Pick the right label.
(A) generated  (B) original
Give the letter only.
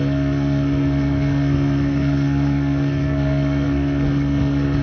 A